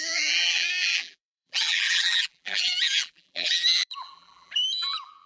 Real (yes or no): no